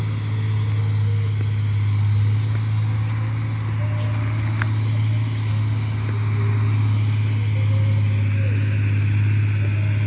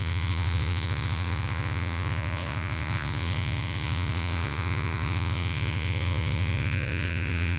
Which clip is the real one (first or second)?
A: first